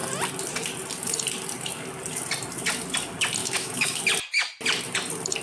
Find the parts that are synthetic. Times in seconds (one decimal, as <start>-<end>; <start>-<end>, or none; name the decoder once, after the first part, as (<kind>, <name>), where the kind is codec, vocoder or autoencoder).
3.4-4.0 (autoencoder, DAC-VAE)